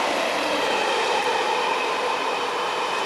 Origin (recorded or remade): remade